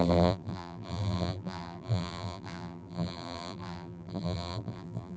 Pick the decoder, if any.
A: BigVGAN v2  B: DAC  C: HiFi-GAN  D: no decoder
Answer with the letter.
A